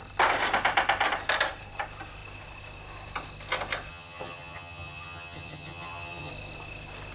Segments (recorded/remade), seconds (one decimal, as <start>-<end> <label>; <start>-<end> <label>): 0.0-3.9 recorded; 3.9-6.3 remade; 6.3-7.1 recorded